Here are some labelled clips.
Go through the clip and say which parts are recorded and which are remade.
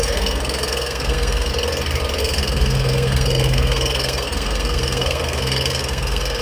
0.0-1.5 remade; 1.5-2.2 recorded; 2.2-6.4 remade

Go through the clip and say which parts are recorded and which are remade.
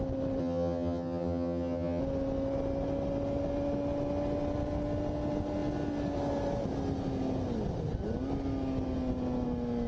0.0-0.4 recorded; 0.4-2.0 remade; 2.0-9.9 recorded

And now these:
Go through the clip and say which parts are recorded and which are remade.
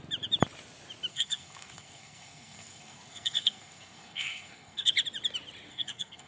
0.0-1.1 recorded; 1.1-4.9 remade; 4.9-5.7 recorded; 5.7-6.3 remade